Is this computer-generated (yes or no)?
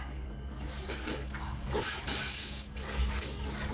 yes